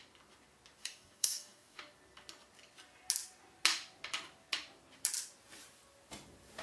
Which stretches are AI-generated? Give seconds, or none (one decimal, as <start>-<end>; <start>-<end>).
0.8-1.8